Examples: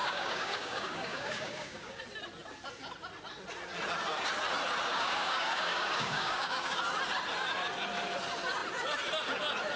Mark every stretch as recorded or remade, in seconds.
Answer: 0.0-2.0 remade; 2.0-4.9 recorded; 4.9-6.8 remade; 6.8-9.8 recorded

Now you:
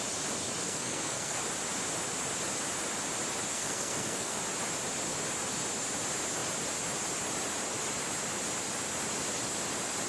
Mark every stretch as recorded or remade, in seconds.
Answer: 0.0-0.6 recorded; 0.6-1.4 remade; 1.4-3.5 recorded; 3.5-4.4 remade; 4.4-10.1 recorded

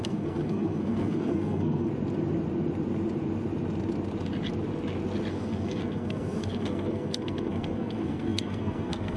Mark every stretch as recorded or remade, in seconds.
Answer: 0.0-1.9 remade; 1.9-5.3 recorded; 5.3-9.2 remade

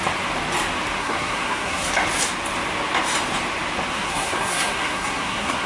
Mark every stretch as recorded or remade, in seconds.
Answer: 0.0-1.0 recorded; 1.0-1.9 remade; 1.9-3.9 recorded; 3.9-5.7 remade